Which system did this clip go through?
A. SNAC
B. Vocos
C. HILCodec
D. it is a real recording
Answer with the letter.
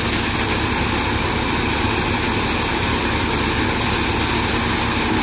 D